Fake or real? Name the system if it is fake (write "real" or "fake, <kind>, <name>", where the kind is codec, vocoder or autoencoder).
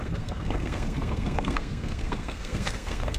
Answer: fake, codec, SNAC